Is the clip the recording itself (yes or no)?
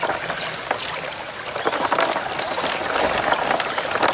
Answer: yes